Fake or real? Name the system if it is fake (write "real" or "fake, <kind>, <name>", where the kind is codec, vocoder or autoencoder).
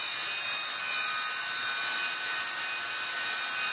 real